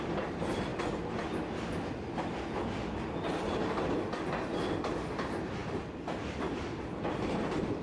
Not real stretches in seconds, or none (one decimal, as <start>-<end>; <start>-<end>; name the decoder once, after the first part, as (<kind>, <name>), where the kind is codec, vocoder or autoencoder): none

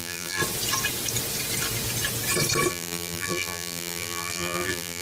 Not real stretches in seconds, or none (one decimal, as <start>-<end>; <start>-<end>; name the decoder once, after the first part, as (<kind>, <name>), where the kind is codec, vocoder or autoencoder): 0.0-0.4 (vocoder, BigVGAN v2); 2.7-5.0

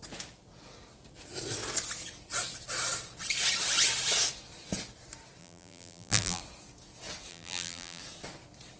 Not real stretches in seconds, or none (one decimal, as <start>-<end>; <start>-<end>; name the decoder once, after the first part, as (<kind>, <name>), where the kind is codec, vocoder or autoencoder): 5.4-6.4 (vocoder, BigVGAN v2); 7.3-8.0

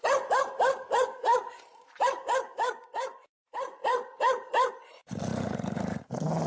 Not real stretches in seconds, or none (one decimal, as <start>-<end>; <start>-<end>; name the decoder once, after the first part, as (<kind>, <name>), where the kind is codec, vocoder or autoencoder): 1.3-4.7 (vocoder, BigVGAN v2); 5.3-6.0

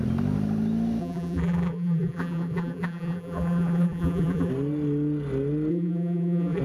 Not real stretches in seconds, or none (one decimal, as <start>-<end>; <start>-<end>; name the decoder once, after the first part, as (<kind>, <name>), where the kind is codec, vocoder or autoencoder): 1.0-4.5 (vocoder, BigVGAN v2); 5.7-6.6

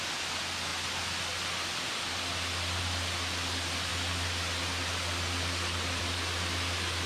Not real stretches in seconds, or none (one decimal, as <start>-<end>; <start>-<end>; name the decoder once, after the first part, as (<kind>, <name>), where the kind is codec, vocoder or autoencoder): none

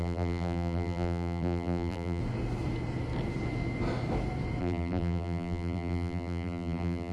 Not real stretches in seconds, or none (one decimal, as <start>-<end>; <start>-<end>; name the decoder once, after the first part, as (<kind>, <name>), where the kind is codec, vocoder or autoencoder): 0.0-2.2 (vocoder, BigVGAN v2); 4.6-7.1